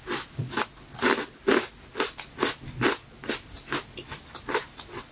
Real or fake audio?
real